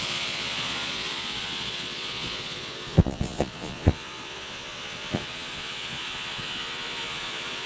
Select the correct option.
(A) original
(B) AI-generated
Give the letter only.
B